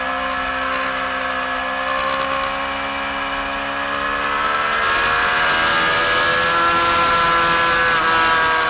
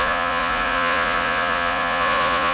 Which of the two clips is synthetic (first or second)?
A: second